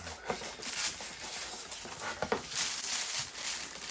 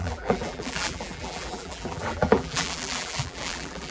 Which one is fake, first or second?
second